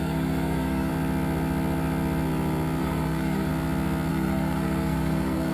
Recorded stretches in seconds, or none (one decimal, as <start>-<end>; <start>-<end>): 0.9-2.8; 3.5-4.1